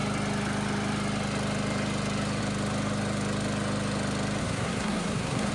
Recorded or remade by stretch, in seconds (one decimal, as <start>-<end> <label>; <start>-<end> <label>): 0.0-4.4 recorded; 4.4-5.5 remade